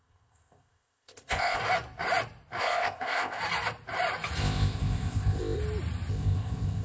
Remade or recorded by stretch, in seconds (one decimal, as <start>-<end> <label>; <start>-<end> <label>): 0.0-1.6 remade; 1.6-2.6 recorded; 2.6-3.4 remade; 3.4-4.4 recorded; 4.4-5.6 remade; 5.6-6.1 recorded; 6.1-6.8 remade